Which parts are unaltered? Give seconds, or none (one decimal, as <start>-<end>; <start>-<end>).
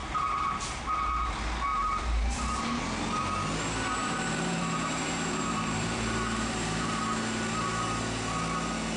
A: 0.8-1.7; 2.8-4.0; 7.2-9.0